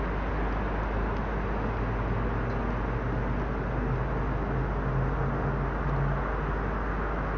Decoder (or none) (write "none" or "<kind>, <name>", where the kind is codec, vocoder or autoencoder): none